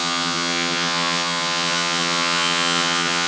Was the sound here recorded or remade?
remade